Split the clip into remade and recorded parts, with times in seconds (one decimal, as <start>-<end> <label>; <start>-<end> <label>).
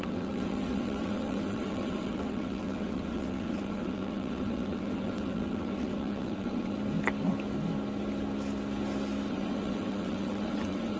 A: 0.0-6.8 remade; 6.8-9.3 recorded; 9.3-11.0 remade